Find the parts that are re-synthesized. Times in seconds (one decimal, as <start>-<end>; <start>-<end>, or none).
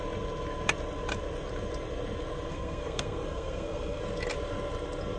2.5-4.0